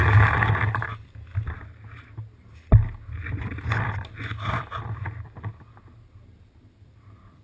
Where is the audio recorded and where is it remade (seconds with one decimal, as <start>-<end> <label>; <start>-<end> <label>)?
0.0-0.8 remade; 0.8-7.4 recorded